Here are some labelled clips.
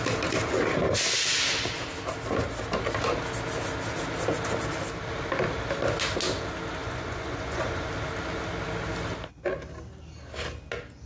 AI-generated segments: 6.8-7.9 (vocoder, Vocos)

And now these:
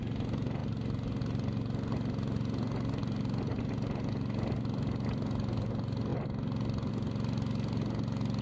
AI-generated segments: none

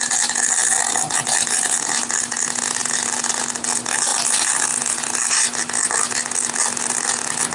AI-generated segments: none